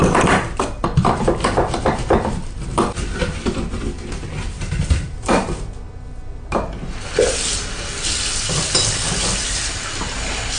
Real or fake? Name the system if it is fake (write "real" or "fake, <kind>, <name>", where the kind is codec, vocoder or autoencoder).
real